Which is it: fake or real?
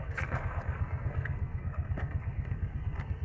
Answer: fake